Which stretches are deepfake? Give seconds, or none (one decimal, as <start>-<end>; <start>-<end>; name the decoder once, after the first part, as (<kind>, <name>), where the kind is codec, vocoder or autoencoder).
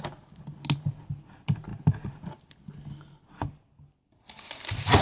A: none